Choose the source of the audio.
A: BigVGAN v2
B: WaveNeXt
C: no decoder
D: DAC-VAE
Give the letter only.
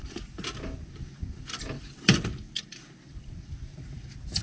A